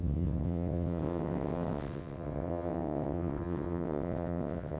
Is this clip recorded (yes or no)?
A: no